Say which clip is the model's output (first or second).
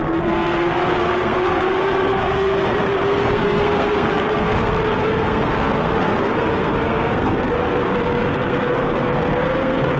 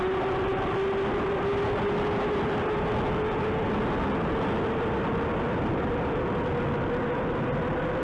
first